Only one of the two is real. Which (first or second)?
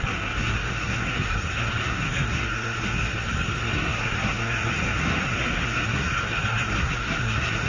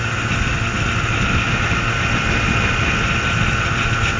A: second